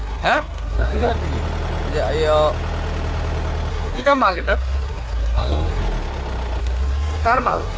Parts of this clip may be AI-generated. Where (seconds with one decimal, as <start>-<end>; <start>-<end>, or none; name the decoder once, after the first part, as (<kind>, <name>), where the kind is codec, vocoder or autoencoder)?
0.0-1.1 (codec, SNAC); 3.7-5.8; 6.6-7.8